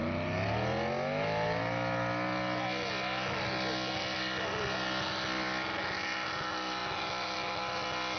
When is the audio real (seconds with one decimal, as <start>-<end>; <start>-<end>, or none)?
0.0-8.2